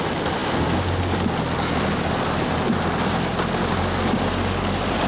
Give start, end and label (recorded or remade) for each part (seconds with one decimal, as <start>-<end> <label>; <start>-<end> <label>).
0.0-5.1 recorded